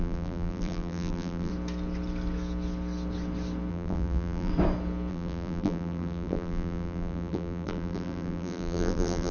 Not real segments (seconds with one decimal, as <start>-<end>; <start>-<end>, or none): 0.0-1.5; 3.7-4.5; 5.1-9.3